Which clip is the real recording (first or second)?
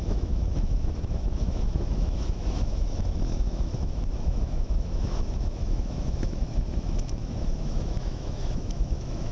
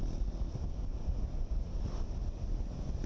second